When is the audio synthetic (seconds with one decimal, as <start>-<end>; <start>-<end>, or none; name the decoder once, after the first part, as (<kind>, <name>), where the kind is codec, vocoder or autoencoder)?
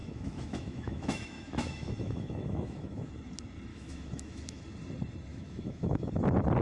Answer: 0.0-3.1 (autoencoder, DAC-VAE); 3.7-4.6; 5.3-6.1